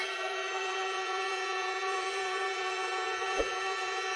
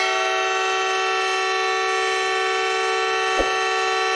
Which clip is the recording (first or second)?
second